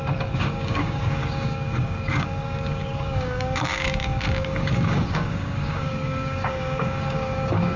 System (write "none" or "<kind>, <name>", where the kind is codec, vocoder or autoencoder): codec, DAC